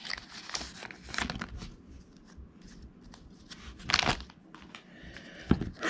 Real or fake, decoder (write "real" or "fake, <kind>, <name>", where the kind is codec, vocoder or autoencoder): real